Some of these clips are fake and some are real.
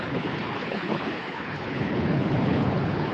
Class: fake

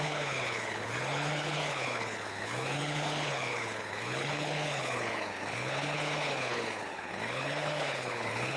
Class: fake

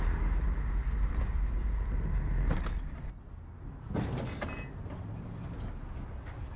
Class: real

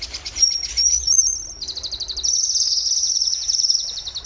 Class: real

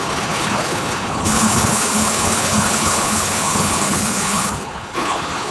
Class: fake